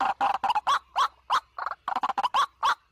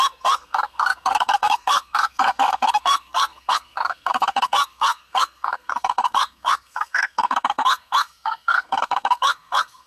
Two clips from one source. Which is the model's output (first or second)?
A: second